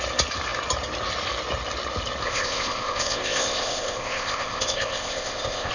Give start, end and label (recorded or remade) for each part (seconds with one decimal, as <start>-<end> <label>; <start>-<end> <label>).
0.0-2.2 recorded; 2.2-5.7 remade